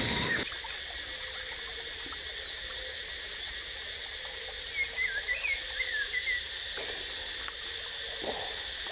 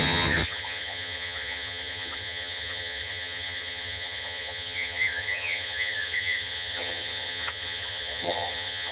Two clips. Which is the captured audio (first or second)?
first